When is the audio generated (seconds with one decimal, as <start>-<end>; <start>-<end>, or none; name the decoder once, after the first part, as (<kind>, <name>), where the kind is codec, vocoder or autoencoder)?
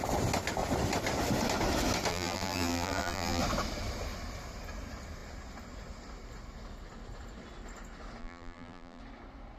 2.1-3.4 (vocoder, BigVGAN v2); 8.2-9.0